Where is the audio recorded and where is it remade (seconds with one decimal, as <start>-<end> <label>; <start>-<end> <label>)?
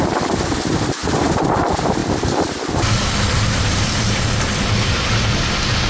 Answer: 0.0-1.0 recorded; 1.0-1.6 remade; 1.6-2.0 recorded; 2.0-5.5 remade; 5.5-5.9 recorded